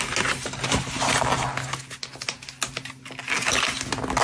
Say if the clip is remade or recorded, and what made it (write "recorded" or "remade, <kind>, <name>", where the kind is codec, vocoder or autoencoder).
recorded